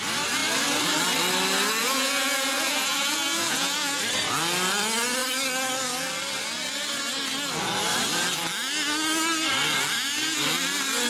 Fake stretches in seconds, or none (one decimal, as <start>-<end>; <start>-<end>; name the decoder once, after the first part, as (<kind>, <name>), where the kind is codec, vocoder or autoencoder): 1.8-4.0 (vocoder, Vocos)